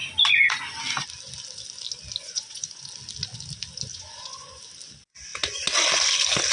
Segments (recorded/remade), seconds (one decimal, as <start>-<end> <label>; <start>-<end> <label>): 0.0-2.2 recorded; 2.2-2.8 remade; 2.8-3.9 recorded; 3.9-4.6 remade; 4.6-6.5 recorded